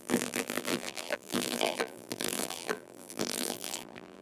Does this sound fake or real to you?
fake